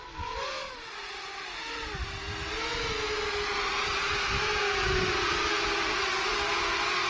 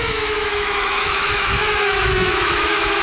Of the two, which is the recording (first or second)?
first